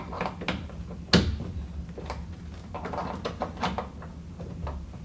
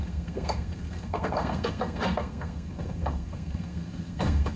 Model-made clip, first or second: second